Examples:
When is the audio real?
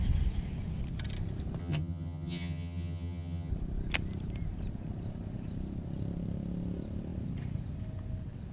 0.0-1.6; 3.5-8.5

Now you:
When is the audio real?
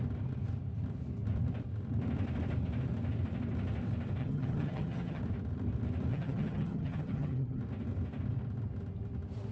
0.0-4.2; 5.2-6.1; 7.6-9.5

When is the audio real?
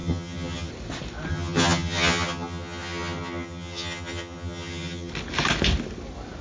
0.7-1.3; 5.1-6.4